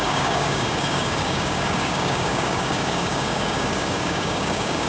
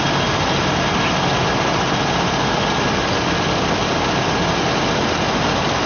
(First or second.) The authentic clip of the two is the second